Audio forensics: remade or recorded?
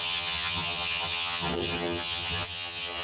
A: remade